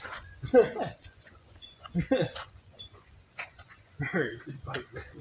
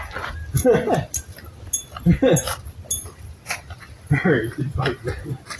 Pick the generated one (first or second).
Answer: first